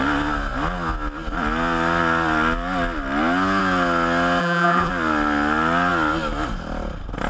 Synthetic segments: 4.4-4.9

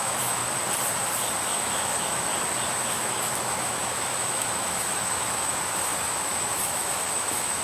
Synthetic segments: 0.0-0.4; 1.5-2.3; 2.8-7.6

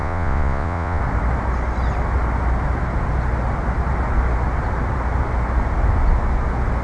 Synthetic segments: 0.0-1.0

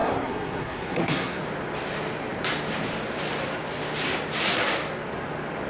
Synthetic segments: 0.0-1.4

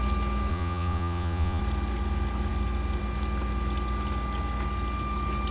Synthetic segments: 0.5-1.6